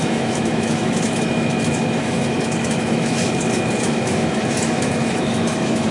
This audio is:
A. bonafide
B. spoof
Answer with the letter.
B